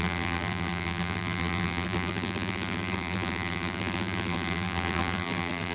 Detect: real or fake fake